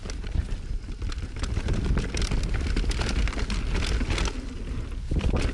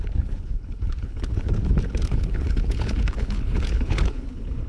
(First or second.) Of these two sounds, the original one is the first